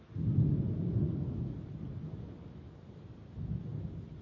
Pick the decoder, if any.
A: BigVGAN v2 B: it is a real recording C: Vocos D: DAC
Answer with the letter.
B